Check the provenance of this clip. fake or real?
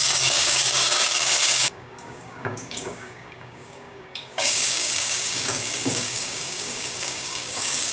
fake